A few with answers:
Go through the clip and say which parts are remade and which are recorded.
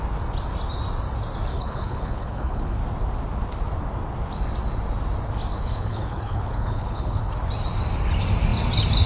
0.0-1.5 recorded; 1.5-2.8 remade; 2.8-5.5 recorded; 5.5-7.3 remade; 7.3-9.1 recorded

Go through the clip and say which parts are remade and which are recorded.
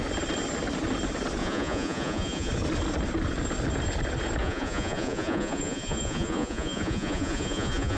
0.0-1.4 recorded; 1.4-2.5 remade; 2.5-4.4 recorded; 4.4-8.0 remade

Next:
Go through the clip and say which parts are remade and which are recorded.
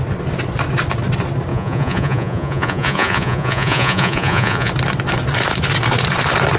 0.0-1.5 recorded; 1.5-4.7 remade; 4.7-6.6 recorded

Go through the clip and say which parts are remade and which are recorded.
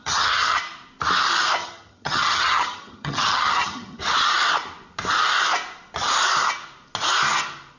0.0-0.6 remade; 0.6-1.6 recorded; 1.6-4.0 remade; 4.0-7.8 recorded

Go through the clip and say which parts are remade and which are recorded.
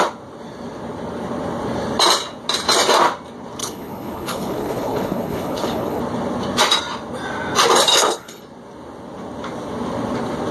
0.0-3.6 recorded; 3.6-6.0 remade; 6.0-7.9 recorded; 7.9-8.4 remade; 8.4-10.5 recorded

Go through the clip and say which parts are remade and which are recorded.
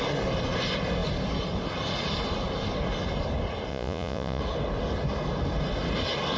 0.0-3.7 recorded; 3.7-4.4 remade; 4.4-6.4 recorded